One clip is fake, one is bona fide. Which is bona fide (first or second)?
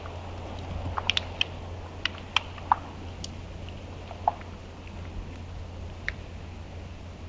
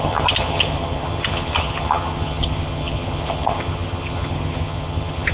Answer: first